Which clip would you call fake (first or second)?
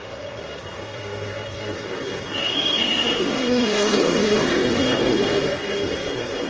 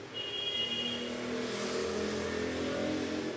first